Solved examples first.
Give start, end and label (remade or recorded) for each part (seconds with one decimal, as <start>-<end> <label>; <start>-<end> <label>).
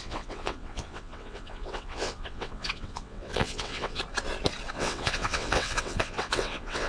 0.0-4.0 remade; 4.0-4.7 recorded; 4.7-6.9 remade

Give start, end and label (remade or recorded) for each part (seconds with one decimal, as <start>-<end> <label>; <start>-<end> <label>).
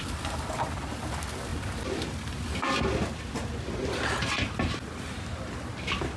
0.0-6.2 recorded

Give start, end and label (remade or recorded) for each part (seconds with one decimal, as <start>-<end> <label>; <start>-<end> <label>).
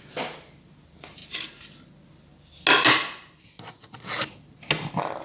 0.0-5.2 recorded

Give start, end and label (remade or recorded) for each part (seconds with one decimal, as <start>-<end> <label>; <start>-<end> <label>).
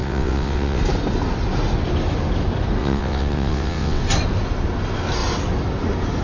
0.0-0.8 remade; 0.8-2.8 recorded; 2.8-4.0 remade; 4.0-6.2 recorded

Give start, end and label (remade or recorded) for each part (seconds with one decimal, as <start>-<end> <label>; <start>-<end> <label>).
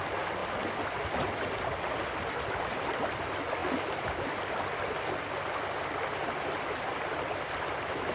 0.0-8.1 recorded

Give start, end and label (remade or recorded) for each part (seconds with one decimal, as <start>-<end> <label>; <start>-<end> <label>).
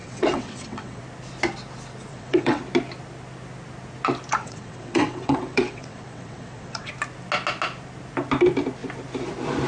0.0-1.0 remade; 1.0-2.1 recorded; 2.1-2.6 remade; 2.6-4.4 recorded; 4.4-6.9 remade; 6.9-9.7 recorded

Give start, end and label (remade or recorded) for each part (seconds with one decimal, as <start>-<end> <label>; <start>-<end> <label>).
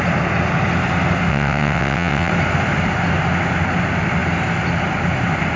0.0-1.3 recorded; 1.3-2.3 remade; 2.3-5.6 recorded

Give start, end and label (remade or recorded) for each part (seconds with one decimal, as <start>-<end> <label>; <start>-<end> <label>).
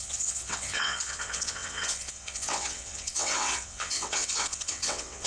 0.0-5.3 remade